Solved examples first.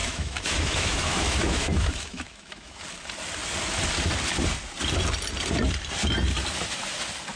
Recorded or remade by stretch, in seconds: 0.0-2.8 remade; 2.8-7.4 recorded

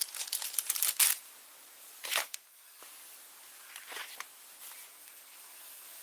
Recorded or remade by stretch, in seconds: 0.0-2.2 recorded; 2.2-2.8 remade; 2.8-4.9 recorded; 4.9-6.0 remade

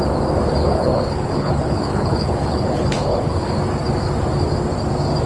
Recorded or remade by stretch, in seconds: 0.0-0.6 recorded; 0.6-3.5 remade; 3.5-5.3 recorded

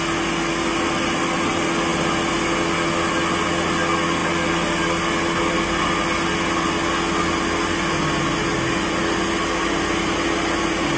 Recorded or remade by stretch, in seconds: 0.0-11.0 recorded

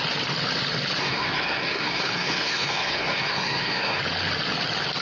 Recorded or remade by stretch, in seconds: 0.0-1.0 recorded; 1.0-4.0 remade; 4.0-5.0 recorded